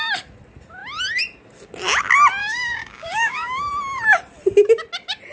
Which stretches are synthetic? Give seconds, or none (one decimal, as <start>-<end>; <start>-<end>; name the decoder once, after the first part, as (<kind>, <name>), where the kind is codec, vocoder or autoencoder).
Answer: 2.4-3.7 (codec, DAC)